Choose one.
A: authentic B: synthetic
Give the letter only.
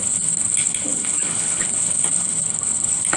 B